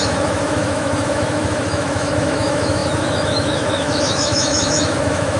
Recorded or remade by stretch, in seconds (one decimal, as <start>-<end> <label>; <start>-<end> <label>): 0.0-5.4 remade